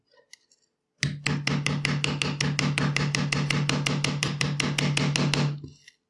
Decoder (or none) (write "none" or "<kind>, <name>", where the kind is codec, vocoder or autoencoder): none